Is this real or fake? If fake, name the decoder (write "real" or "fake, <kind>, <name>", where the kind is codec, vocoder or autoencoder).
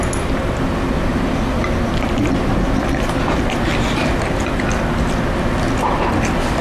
real